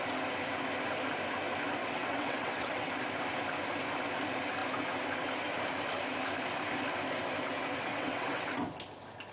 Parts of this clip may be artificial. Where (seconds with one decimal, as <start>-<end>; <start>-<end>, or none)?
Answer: 1.8-2.9; 7.9-8.5